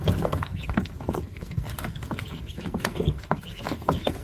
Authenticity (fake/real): fake